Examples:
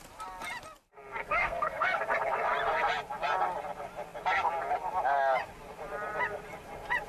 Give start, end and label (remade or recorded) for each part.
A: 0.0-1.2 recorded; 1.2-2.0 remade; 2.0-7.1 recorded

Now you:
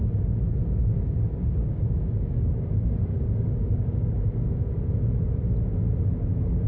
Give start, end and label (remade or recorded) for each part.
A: 0.0-0.8 recorded; 0.8-4.8 remade; 4.8-6.7 recorded

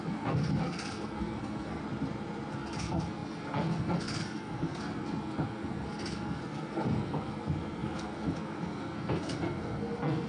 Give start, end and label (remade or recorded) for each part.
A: 0.0-1.8 remade; 1.8-2.5 recorded; 2.5-10.3 remade

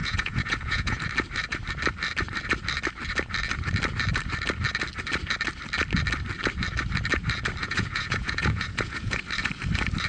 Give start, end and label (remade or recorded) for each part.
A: 0.0-1.0 remade; 1.0-7.6 recorded; 7.6-9.2 remade; 9.2-10.1 recorded

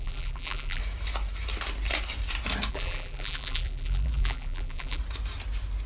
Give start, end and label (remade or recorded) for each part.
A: 0.0-0.8 remade; 0.8-2.7 recorded; 2.7-5.0 remade; 5.0-5.9 recorded

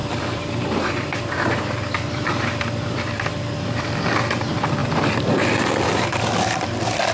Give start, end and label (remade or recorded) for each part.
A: 0.0-3.8 remade; 3.8-4.8 recorded; 4.8-7.1 remade

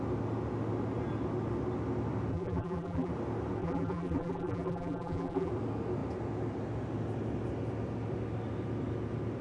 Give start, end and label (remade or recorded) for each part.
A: 0.0-2.3 recorded; 2.3-3.1 remade; 3.1-3.6 recorded; 3.6-5.5 remade; 5.5-9.4 recorded

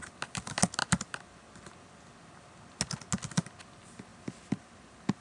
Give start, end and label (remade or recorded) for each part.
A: 0.0-5.2 recorded